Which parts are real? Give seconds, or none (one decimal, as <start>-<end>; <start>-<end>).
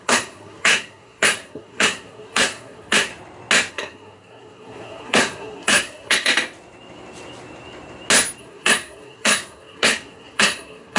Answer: 3.1-3.7; 6.3-8.4